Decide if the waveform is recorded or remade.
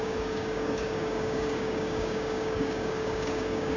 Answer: remade